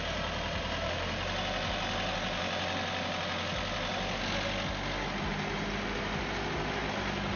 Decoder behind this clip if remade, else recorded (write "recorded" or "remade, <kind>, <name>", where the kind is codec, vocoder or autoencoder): recorded